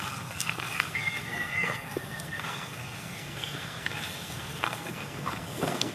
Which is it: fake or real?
fake